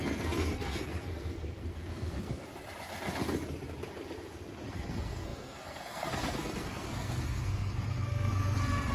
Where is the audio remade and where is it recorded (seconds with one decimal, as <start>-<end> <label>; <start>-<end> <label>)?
0.0-2.5 remade; 2.5-4.7 recorded; 4.7-8.9 remade